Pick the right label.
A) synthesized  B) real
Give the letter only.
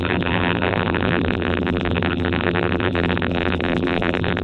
A